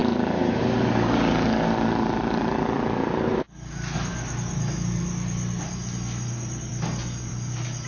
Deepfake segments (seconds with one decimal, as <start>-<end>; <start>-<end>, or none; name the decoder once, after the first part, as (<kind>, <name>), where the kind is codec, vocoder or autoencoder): 0.0-0.6 (vocoder, BigVGAN v2)